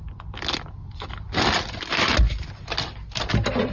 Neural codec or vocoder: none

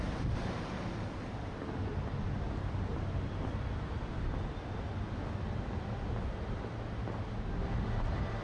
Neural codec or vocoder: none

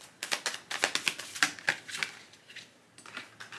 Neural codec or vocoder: none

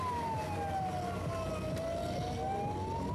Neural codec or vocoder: none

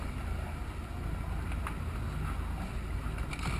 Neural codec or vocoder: none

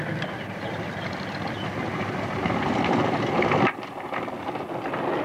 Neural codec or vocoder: none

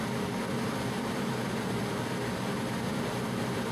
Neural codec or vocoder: none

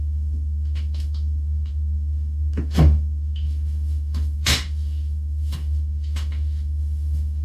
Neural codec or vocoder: autoencoder, DAC-VAE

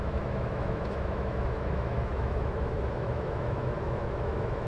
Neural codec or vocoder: autoencoder, DAC-VAE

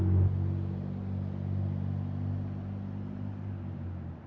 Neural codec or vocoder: none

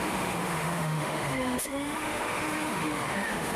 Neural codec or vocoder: autoencoder, DAC-VAE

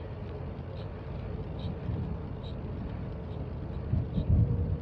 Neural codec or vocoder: none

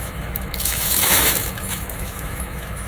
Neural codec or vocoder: autoencoder, DAC-VAE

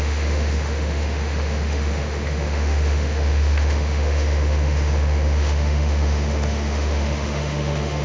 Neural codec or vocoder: autoencoder, DAC-VAE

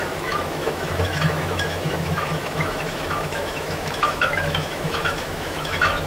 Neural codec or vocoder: autoencoder, DAC-VAE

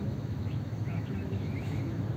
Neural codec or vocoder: autoencoder, DAC-VAE